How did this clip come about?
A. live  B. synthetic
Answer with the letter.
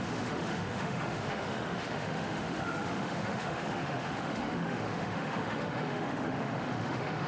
B